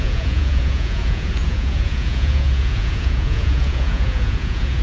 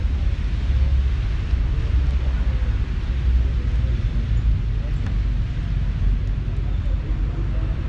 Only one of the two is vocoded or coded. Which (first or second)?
first